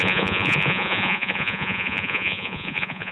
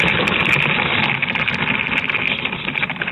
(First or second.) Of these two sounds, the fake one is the first